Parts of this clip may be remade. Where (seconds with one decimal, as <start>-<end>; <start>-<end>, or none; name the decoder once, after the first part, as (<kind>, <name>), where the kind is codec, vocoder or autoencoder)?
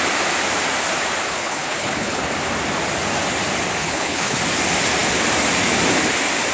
1.3-2.2 (codec, HILCodec); 3.8-4.4